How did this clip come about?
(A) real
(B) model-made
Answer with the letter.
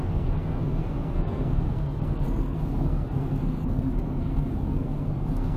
B